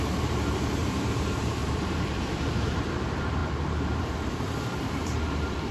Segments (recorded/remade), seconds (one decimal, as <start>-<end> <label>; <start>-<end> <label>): 0.0-5.7 remade